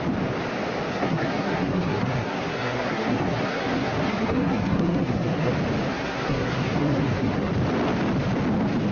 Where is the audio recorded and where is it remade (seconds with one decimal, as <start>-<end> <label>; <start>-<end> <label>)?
0.0-0.9 recorded; 0.9-5.5 remade; 5.5-5.9 recorded; 5.9-7.5 remade; 7.5-8.9 recorded